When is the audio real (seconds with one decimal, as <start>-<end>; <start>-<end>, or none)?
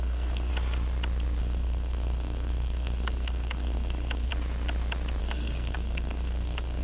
0.5-1.4; 4.3-5.2